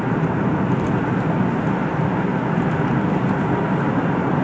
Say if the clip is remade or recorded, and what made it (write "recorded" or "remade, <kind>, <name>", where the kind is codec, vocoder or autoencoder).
recorded